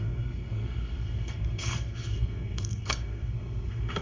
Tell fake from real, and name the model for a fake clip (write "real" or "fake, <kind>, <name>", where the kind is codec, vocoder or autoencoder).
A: fake, codec, SNAC